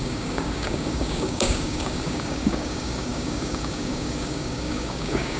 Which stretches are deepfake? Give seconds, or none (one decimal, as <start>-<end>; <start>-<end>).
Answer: 0.0-5.4